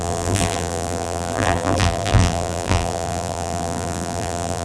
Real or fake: fake